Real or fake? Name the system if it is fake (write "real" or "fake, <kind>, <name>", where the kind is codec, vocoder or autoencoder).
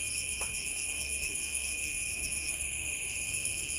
fake, codec, SNAC